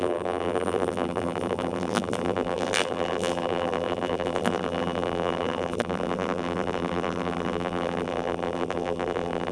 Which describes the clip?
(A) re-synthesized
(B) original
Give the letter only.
A